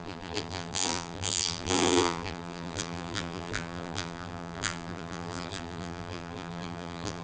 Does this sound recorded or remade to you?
remade